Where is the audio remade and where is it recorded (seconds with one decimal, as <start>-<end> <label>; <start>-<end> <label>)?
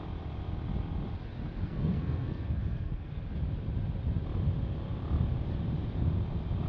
0.0-1.6 recorded; 1.6-3.2 remade; 3.2-6.7 recorded